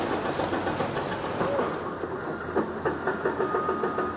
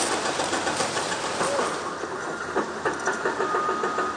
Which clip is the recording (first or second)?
first